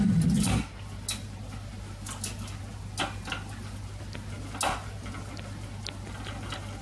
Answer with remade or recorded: recorded